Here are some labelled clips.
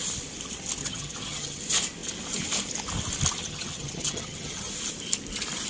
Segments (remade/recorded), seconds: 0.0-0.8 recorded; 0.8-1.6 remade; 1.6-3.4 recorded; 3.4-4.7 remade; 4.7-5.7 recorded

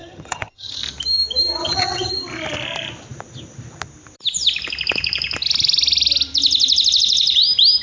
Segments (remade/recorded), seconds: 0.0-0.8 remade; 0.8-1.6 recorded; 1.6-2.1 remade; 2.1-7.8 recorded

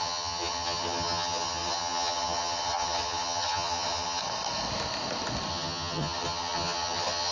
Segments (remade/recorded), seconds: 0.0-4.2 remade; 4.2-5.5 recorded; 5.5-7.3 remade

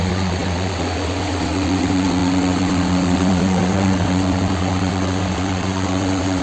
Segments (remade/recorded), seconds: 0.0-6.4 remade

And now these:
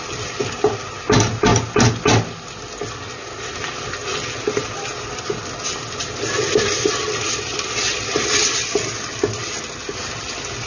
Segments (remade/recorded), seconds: 0.0-10.7 recorded

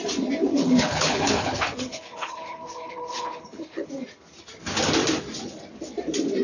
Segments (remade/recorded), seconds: 0.0-0.5 recorded; 0.5-3.9 remade; 3.9-6.4 recorded

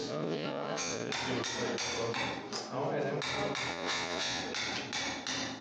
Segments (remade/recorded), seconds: 0.0-1.1 remade; 1.1-3.7 recorded; 3.7-4.4 remade; 4.4-5.6 recorded

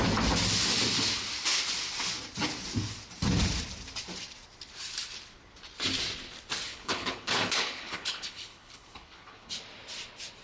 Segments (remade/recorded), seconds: 0.0-6.7 recorded; 6.7-9.5 remade; 9.5-10.4 recorded